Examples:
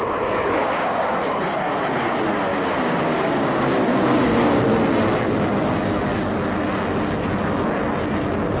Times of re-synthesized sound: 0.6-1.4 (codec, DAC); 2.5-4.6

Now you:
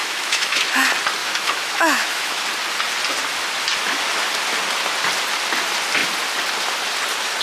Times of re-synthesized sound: 0.0-0.7 (autoencoder, DAC-VAE); 1.2-2.4